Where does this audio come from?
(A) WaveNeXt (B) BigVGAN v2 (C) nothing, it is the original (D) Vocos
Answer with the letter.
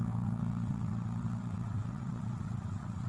A